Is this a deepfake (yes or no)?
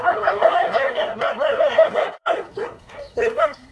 yes